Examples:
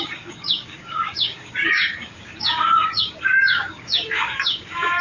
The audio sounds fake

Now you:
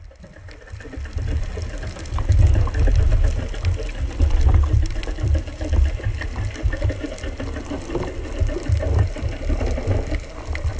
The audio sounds real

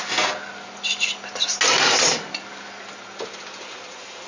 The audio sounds real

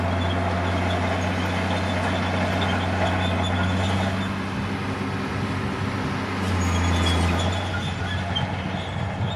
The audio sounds real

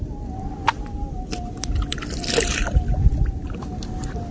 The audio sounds real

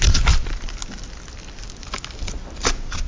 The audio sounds real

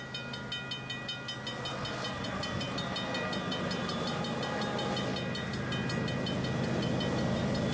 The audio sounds real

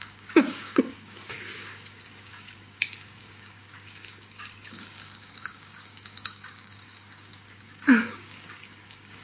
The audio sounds fake